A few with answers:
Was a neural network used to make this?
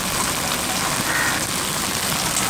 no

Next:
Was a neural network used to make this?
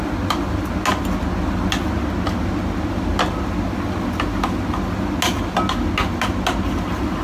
no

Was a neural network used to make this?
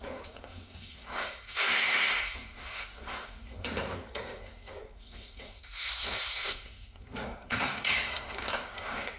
yes